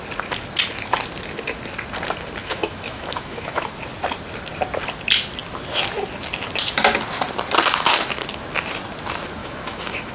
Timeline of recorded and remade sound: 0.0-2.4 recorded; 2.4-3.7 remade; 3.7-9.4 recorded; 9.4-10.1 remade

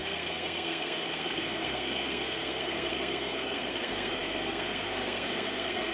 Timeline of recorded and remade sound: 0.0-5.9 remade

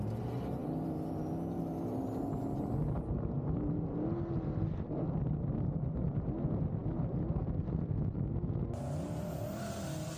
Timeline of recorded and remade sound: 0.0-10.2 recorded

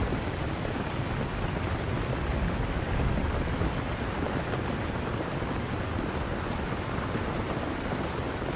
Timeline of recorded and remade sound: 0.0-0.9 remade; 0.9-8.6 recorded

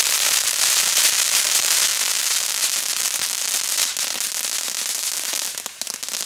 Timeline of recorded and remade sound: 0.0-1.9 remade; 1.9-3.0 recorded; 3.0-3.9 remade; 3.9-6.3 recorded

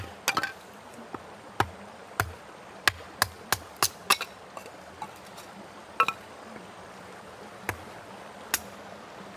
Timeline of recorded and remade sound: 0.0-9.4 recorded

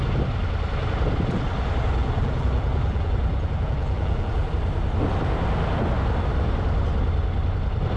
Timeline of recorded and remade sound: 0.0-2.0 recorded; 2.0-4.5 remade; 4.5-8.0 recorded